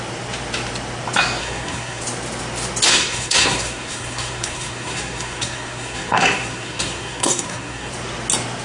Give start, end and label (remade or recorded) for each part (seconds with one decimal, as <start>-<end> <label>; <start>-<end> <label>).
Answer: 0.0-1.4 recorded; 1.4-2.0 remade; 2.0-2.9 recorded; 2.9-7.9 remade; 7.9-8.6 recorded